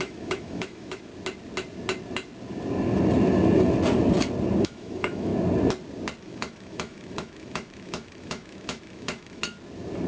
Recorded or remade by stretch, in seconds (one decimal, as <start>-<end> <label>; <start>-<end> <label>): 0.0-1.1 remade; 1.1-4.6 recorded; 4.6-5.3 remade; 5.3-6.2 recorded; 6.2-9.4 remade; 9.4-10.1 recorded